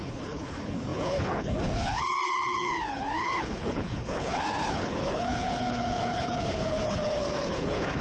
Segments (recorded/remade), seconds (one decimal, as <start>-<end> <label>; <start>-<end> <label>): 0.0-8.0 remade